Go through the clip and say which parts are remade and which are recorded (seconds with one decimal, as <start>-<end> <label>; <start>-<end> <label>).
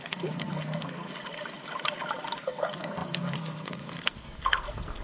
0.0-1.1 remade; 1.1-2.4 recorded; 2.4-5.0 remade